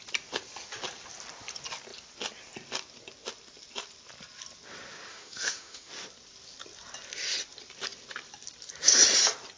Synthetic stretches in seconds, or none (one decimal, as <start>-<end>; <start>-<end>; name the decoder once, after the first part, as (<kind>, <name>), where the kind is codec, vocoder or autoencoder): 5.1-5.9 (autoencoder, DAC-VAE)